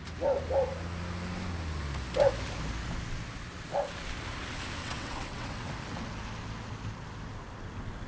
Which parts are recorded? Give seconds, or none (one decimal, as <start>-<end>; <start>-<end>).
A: 0.0-4.8; 5.7-8.1